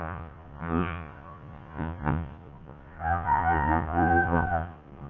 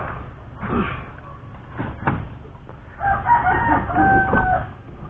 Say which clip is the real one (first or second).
second